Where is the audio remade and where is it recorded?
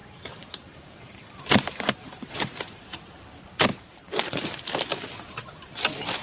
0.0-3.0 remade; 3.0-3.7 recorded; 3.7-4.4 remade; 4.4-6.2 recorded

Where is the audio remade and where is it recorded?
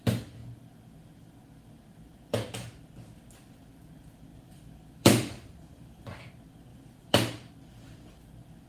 0.0-4.3 recorded; 4.3-6.3 remade; 6.3-6.7 recorded; 6.7-7.5 remade; 7.5-8.7 recorded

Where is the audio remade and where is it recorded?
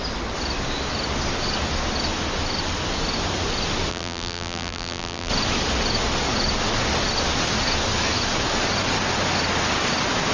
0.0-3.9 recorded; 3.9-5.3 remade; 5.3-10.3 recorded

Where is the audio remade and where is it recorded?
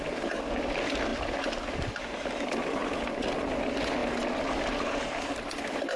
0.0-6.0 recorded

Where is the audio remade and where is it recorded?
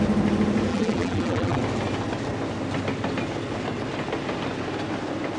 0.0-0.7 recorded; 0.7-1.6 remade; 1.6-5.4 recorded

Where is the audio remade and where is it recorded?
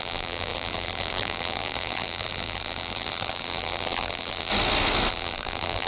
0.0-4.5 remade; 4.5-5.1 recorded; 5.1-5.9 remade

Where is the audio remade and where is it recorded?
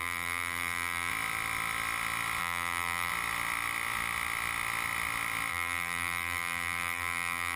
0.0-1.1 remade; 1.1-2.4 recorded; 2.4-3.1 remade; 3.1-5.5 recorded; 5.5-7.6 remade